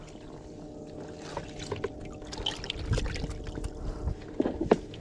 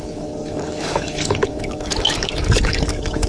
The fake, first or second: second